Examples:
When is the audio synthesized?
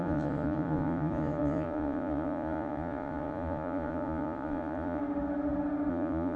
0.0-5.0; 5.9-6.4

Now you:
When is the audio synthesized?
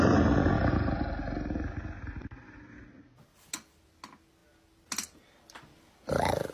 none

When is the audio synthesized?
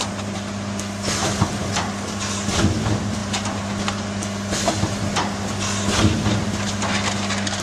none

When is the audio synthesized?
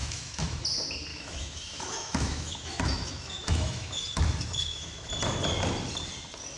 0.0-0.6; 1.1-5.1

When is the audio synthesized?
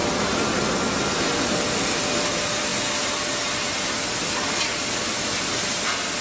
none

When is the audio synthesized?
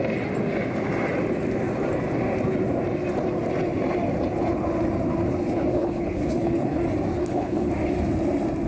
5.7-6.8; 7.2-7.7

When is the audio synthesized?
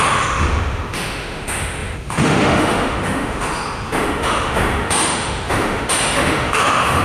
0.0-7.0